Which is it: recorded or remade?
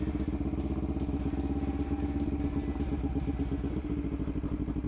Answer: recorded